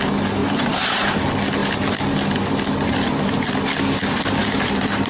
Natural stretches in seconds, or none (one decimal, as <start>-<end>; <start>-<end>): 0.0-0.4; 1.2-4.4